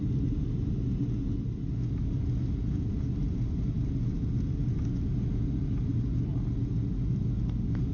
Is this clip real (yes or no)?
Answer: yes